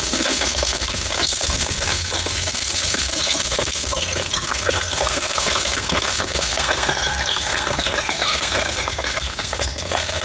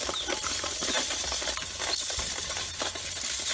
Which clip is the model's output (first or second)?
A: first